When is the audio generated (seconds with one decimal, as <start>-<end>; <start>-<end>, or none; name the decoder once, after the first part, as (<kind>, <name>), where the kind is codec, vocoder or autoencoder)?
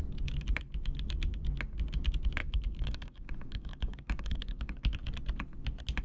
2.4-5.0 (codec, DAC)